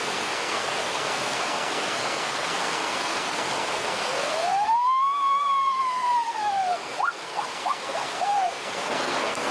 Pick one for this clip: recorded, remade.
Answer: remade